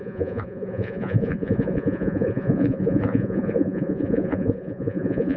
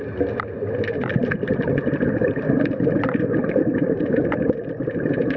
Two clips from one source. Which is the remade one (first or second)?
first